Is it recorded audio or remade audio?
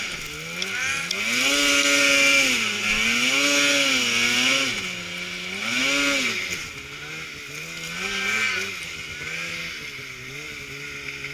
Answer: recorded